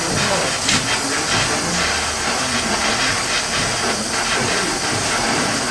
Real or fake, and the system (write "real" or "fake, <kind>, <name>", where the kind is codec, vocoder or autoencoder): real